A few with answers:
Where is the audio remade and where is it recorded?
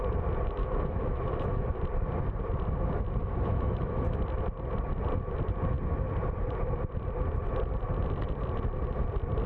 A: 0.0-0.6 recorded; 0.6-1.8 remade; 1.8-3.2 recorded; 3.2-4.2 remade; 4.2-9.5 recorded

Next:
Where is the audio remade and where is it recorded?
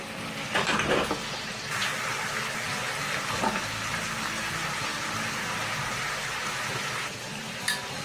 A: 0.0-1.2 remade; 1.2-4.5 recorded; 4.5-4.9 remade; 4.9-6.7 recorded; 6.7-8.0 remade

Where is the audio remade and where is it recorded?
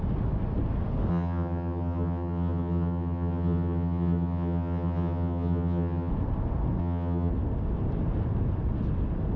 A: 0.0-1.1 recorded; 1.1-6.1 remade; 6.1-6.8 recorded; 6.8-7.3 remade; 7.3-9.4 recorded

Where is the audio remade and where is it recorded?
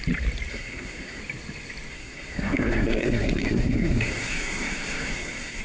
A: 0.0-0.5 recorded; 0.5-1.2 remade; 1.2-1.9 recorded; 1.9-5.6 remade